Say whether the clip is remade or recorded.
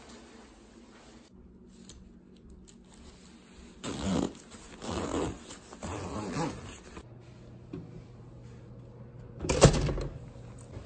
recorded